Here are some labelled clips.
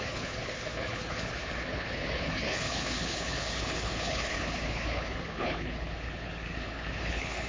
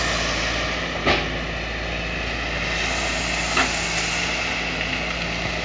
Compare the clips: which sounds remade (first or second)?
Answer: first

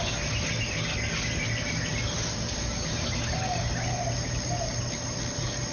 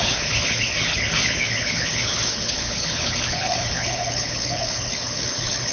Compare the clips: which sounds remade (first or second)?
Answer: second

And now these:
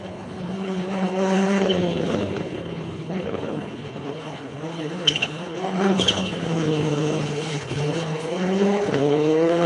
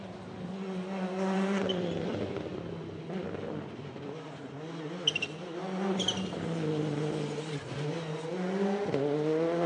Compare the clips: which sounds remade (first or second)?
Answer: first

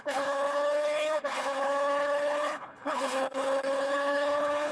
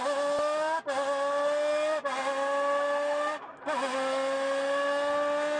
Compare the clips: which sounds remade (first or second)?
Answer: first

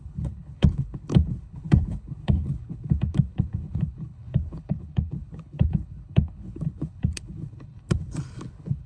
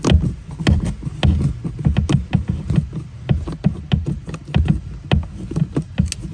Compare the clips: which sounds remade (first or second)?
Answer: first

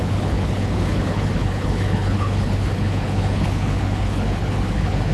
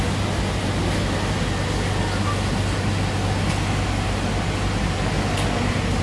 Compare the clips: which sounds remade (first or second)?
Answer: first